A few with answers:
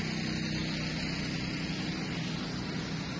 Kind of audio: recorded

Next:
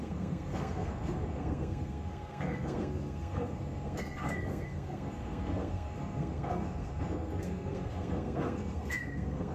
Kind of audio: remade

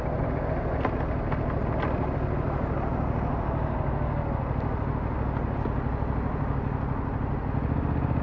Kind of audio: recorded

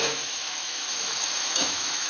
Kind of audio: remade